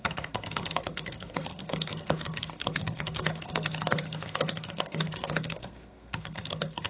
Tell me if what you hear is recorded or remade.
remade